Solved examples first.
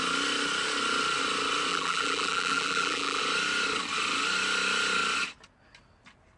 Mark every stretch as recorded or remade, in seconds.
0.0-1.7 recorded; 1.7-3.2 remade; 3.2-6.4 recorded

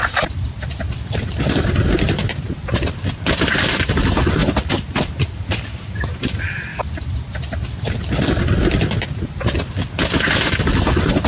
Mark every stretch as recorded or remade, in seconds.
0.0-6.7 remade; 6.7-10.6 recorded; 10.6-11.3 remade

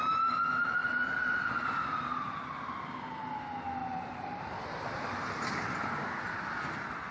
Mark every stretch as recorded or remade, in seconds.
0.0-3.8 recorded; 3.8-5.7 remade; 5.7-7.1 recorded

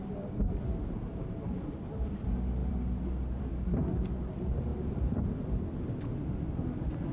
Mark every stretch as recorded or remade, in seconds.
0.0-2.6 recorded; 2.6-4.1 remade; 4.1-4.7 recorded; 4.7-5.5 remade; 5.5-7.1 recorded